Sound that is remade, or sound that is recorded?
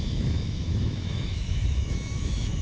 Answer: remade